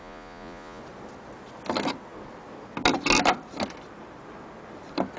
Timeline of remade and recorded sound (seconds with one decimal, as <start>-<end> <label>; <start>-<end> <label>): 0.0-0.8 remade; 0.8-5.2 recorded

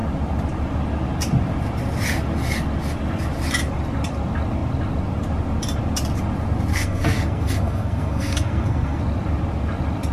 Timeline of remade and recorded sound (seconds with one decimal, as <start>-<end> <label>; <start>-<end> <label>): 0.0-6.7 recorded; 6.7-9.0 remade; 9.0-10.1 recorded

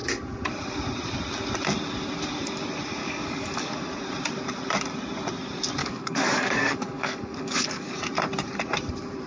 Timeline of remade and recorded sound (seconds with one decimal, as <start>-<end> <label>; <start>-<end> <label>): 0.0-3.0 recorded; 3.0-3.8 remade; 3.8-5.8 recorded; 5.8-8.0 remade; 8.0-9.3 recorded